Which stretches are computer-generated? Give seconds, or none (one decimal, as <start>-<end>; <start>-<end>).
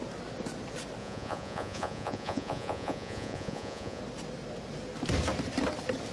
1.0-4.0